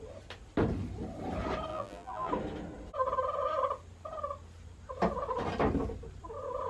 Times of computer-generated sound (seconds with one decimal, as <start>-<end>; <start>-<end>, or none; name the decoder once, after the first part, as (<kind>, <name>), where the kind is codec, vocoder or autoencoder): 1.7-2.3 (vocoder, BigVGAN v2)